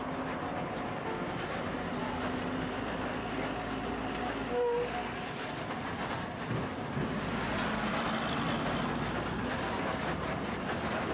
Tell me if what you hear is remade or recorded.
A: recorded